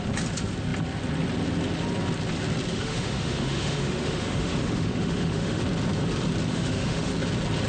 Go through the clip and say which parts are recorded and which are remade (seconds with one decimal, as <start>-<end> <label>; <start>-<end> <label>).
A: 0.0-2.7 recorded; 2.7-5.6 remade; 5.6-6.5 recorded; 6.5-7.1 remade; 7.1-7.7 recorded